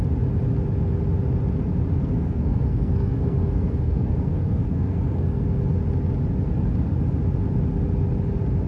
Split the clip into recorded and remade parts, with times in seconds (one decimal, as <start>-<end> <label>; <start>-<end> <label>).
0.0-2.0 recorded; 2.0-5.6 remade; 5.6-8.7 recorded